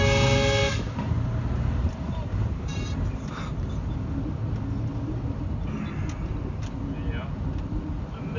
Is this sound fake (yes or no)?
no